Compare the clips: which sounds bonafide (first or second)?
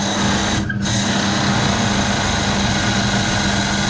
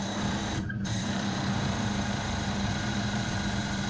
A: first